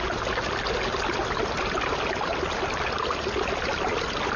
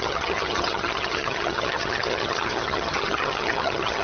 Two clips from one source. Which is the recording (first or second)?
first